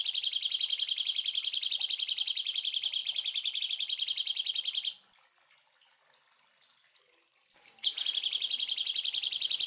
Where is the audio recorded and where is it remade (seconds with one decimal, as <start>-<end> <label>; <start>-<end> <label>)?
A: 0.0-9.7 recorded